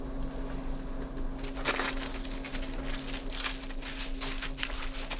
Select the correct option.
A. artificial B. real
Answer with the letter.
B